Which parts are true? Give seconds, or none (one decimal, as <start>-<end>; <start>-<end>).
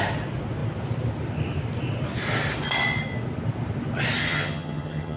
0.0-4.2